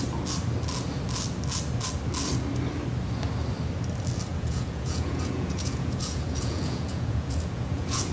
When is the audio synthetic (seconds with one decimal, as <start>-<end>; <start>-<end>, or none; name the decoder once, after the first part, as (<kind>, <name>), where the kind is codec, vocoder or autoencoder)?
4.3-8.1 (vocoder, Vocos)